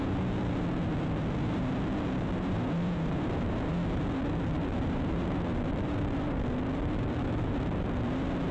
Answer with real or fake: fake